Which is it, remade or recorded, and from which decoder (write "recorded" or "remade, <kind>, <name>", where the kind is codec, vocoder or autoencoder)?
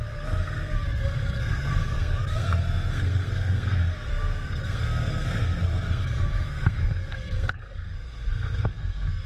remade, codec, SNAC